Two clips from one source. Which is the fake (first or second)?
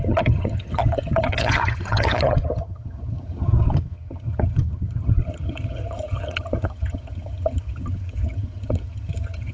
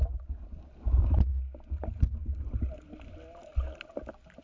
first